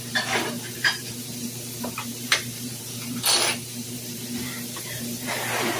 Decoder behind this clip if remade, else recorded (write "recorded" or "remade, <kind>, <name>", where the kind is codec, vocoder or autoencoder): remade, vocoder, BigVGAN v2